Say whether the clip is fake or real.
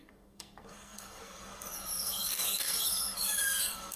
fake